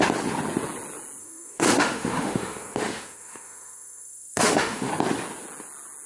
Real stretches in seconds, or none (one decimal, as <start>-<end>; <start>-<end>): 0.0-1.2; 4.9-6.1